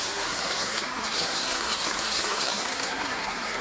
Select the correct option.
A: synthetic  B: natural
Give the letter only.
A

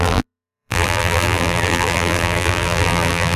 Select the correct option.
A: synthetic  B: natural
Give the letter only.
A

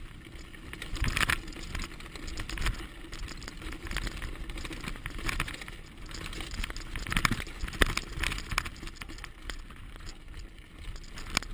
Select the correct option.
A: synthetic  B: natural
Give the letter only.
B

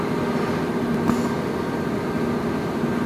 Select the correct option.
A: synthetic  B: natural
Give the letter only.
B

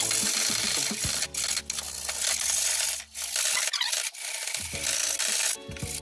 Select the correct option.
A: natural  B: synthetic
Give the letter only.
A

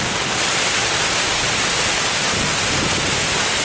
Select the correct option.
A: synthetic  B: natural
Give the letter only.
B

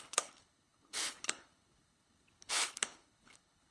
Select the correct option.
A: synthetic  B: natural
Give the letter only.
A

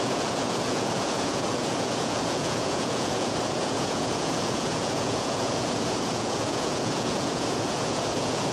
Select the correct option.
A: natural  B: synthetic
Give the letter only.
B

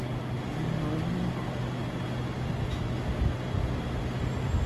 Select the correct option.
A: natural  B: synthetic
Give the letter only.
A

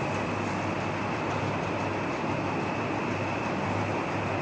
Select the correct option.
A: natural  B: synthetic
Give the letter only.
A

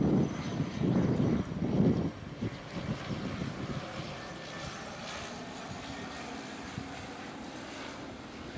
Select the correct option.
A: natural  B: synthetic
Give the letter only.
A